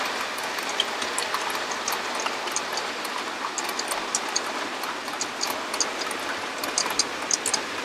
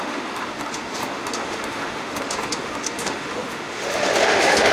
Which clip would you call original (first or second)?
first